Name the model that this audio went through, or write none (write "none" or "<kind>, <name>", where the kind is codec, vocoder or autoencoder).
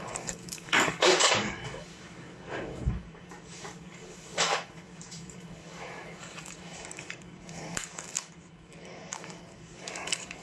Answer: codec, DAC